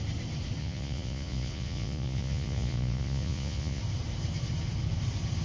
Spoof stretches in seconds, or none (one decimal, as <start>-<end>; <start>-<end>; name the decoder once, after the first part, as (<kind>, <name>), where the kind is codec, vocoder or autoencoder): 0.6-3.8 (vocoder, Vocos)